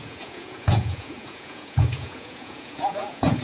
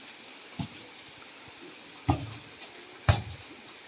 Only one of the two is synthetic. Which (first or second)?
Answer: first